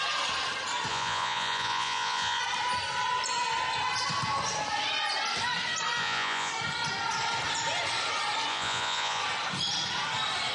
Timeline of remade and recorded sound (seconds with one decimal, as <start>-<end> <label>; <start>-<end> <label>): 0.0-0.9 recorded; 0.9-2.4 remade; 2.4-6.0 recorded; 6.0-6.5 remade; 6.5-8.5 recorded; 8.5-9.2 remade; 9.2-10.5 recorded

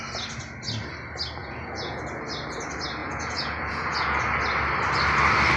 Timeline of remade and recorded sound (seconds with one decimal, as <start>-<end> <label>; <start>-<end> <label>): 0.0-1.4 recorded; 1.4-2.0 remade; 2.0-3.0 recorded; 3.0-4.2 remade; 4.2-5.6 recorded

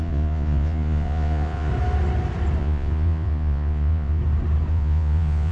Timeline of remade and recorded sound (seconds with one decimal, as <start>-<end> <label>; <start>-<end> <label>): 0.0-1.7 remade; 1.7-2.6 recorded; 2.6-4.2 remade; 4.2-4.7 recorded; 4.7-5.5 remade

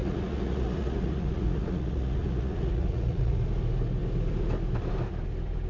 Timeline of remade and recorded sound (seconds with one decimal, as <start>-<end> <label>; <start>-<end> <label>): 0.0-3.4 remade; 3.4-5.7 recorded

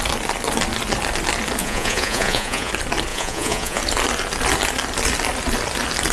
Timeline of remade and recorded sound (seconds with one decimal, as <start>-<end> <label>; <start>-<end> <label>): 0.0-1.6 recorded; 1.6-2.7 remade; 2.7-3.1 recorded; 3.1-3.8 remade; 3.8-6.1 recorded

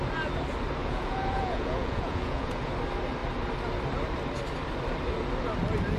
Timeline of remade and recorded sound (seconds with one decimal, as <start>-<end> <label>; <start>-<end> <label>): 0.0-0.8 recorded; 0.8-2.7 remade; 2.7-6.0 recorded

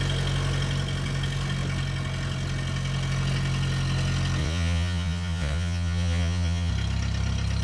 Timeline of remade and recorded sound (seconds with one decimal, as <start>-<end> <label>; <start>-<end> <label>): 0.0-4.4 recorded; 4.4-6.7 remade; 6.7-7.6 recorded

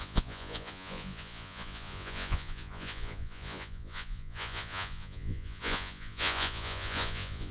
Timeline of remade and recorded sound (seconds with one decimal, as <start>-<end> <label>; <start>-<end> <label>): 0.0-7.5 remade